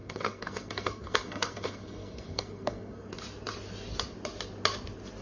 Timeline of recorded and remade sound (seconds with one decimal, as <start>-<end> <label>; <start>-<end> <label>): 0.0-3.1 remade; 3.1-5.2 recorded